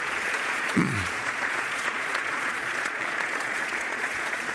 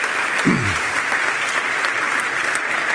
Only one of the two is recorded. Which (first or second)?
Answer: second